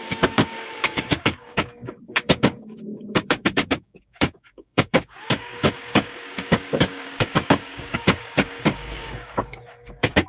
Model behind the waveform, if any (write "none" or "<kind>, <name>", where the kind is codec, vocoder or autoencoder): codec, DAC